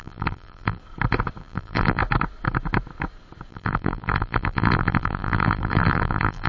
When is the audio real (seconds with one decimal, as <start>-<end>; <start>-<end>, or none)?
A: 0.8-1.4; 2.0-3.5